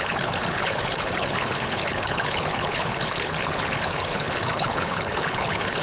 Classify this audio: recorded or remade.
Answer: remade